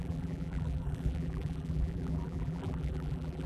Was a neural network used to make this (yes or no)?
yes